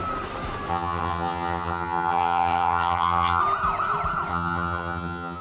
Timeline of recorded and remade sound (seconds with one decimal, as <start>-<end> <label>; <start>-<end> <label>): 0.0-0.7 recorded; 0.7-3.4 remade; 3.4-4.3 recorded; 4.3-5.4 remade